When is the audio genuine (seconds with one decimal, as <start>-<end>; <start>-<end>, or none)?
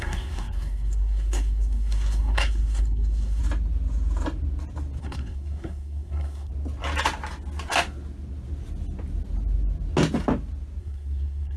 3.4-5.0; 6.5-10.8